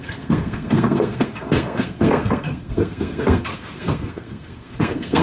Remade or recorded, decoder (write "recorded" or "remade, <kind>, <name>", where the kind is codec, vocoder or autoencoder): remade, codec, SNAC